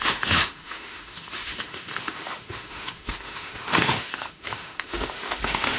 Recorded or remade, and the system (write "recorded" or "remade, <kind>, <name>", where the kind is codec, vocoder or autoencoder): remade, autoencoder, DAC-VAE